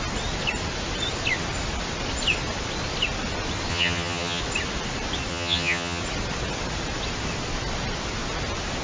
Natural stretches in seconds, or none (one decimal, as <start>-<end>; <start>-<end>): 0.0-3.7; 4.4-5.3; 6.0-8.8